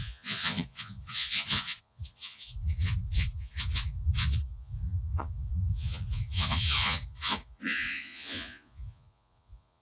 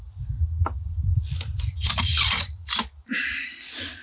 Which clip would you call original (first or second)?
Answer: second